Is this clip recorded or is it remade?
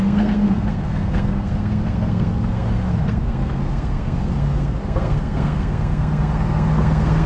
remade